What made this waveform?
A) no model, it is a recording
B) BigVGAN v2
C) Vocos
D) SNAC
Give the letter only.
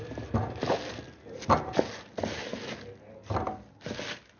A